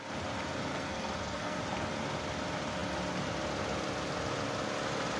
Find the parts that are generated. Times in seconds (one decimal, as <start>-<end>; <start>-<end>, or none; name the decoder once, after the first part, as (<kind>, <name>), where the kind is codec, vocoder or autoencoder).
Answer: 0.7-1.6 (codec, SNAC)